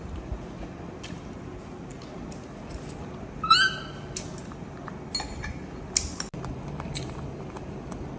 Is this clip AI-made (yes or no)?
no